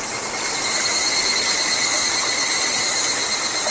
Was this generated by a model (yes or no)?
no